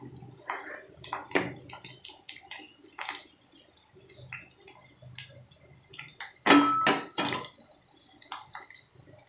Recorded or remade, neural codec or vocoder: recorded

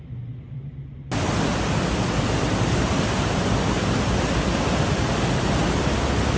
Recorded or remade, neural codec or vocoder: recorded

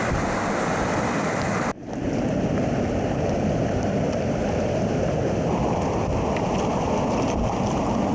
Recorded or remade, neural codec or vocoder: recorded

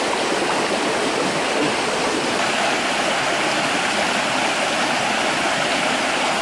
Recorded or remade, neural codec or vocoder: recorded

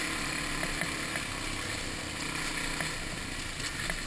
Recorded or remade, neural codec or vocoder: recorded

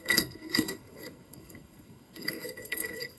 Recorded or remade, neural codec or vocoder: remade, codec, SNAC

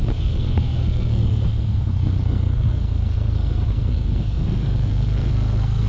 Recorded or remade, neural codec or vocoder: remade, codec, SNAC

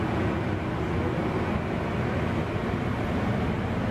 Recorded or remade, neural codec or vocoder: recorded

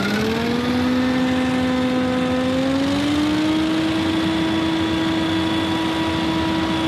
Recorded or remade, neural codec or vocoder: recorded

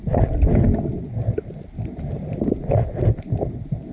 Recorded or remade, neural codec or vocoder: recorded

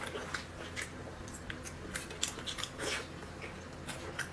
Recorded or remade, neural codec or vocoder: recorded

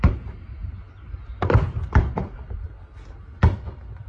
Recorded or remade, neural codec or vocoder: recorded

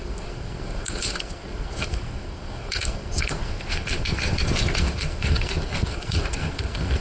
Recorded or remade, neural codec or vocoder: remade, codec, SNAC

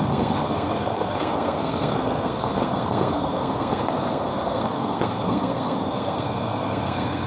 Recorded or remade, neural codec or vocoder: remade, codec, SNAC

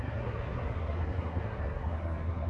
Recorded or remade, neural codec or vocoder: remade, codec, SNAC